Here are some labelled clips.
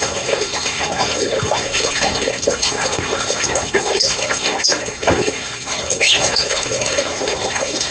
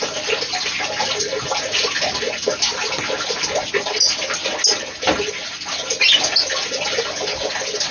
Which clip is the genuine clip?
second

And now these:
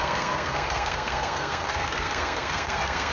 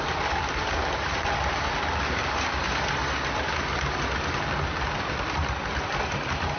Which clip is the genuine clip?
second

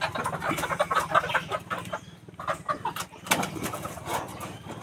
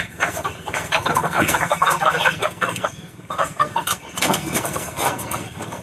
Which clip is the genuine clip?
first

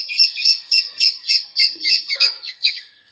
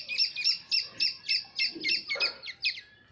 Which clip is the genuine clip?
second